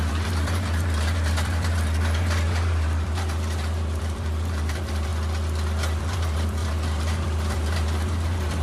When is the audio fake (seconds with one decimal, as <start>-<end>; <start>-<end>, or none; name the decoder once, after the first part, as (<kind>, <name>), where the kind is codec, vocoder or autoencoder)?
0.0-5.1 (vocoder, BigVGAN v2); 6.0-8.6